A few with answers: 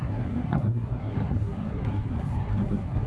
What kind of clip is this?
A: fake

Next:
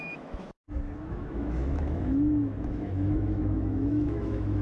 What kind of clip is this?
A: fake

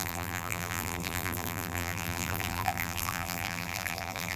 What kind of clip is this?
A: fake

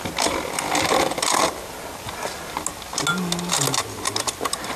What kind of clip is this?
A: real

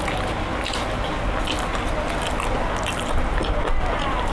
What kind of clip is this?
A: real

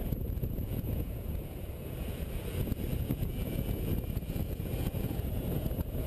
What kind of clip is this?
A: fake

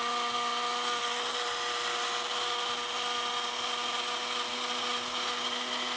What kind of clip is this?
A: real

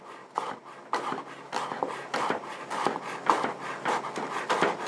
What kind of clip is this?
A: real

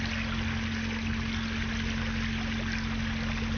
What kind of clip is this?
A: real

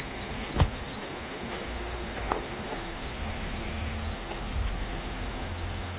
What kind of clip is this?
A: fake